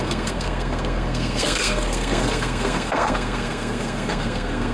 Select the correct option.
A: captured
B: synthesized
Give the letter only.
B